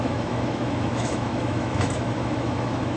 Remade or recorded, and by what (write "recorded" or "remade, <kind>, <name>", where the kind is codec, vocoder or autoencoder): remade, autoencoder, DAC-VAE